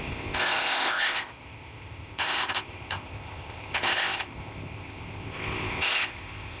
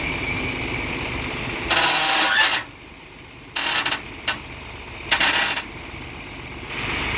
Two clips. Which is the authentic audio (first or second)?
second